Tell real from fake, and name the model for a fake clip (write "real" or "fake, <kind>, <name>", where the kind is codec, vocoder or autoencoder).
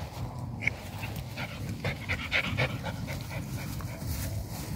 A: real